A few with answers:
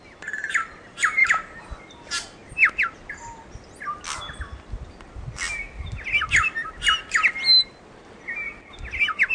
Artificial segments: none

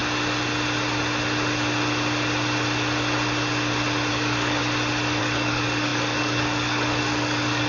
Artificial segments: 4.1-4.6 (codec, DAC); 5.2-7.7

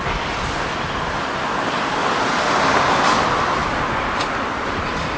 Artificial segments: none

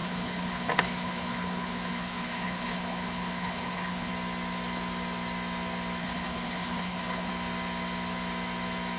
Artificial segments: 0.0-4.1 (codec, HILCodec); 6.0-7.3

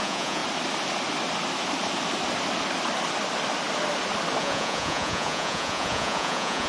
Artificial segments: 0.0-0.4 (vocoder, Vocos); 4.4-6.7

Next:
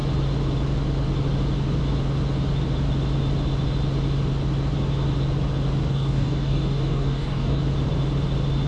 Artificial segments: 5.9-7.6 (codec, DAC)

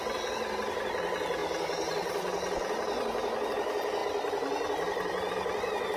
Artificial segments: none

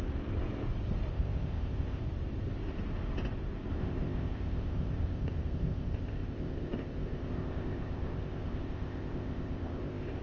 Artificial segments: 1.1-2.0 (codec, ZipCodec); 3.7-10.2